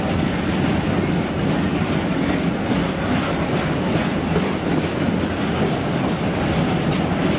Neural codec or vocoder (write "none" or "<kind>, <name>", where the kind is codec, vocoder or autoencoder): none